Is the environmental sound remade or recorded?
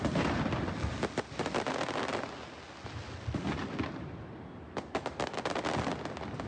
recorded